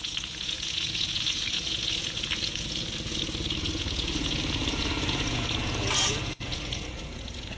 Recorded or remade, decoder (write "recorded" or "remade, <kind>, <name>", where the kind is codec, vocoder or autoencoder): remade, vocoder, Vocos